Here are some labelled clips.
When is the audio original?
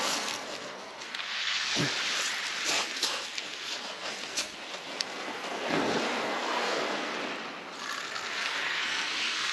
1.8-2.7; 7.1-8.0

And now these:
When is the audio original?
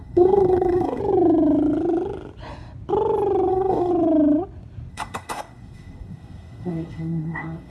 1.0-3.5; 3.9-4.9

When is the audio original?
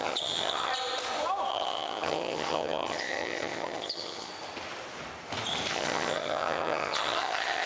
0.7-1.5; 4.3-5.7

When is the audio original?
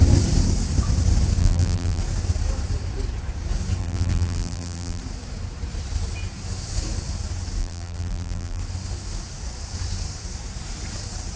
0.0-1.4; 2.0-3.8; 5.0-7.6; 8.6-11.4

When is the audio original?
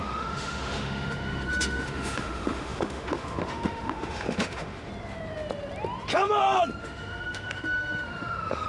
4.9-6.8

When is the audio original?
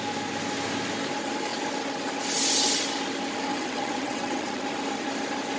0.0-3.5; 4.6-5.6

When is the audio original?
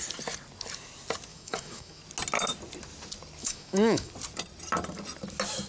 0.0-1.3; 2.0-3.4; 4.1-5.7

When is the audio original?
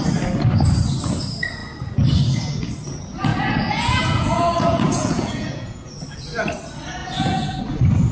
0.0-3.3; 5.9-7.0; 7.6-8.1